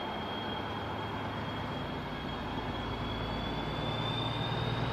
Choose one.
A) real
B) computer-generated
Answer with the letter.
A